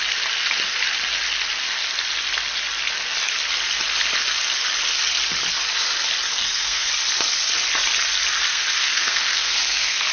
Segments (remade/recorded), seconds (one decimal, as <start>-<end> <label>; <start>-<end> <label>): 0.0-6.3 recorded; 6.3-6.9 remade; 6.9-8.5 recorded; 8.5-10.1 remade